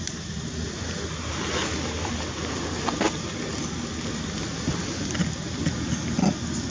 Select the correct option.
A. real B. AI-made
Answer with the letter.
A